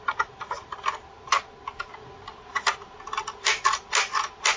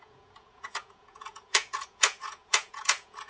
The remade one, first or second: second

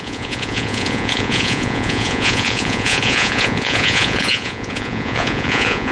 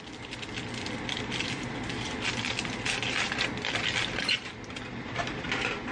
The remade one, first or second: first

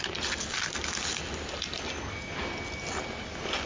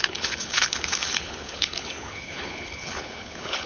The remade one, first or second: second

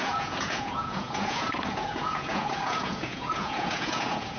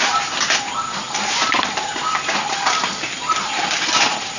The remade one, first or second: first